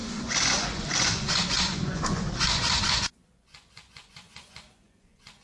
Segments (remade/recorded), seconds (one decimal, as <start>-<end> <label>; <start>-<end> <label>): 0.0-5.4 remade